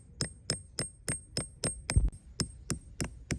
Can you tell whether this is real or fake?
real